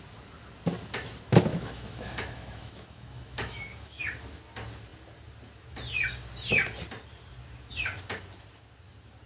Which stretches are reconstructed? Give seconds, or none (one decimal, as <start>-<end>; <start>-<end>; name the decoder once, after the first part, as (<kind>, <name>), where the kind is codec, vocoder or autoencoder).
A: 1.5-4.0 (autoencoder, DAC-VAE)